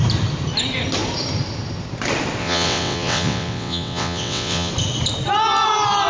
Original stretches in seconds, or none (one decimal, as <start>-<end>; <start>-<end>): 0.0-2.4; 4.7-6.1